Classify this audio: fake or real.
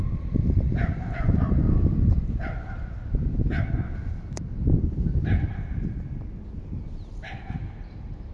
real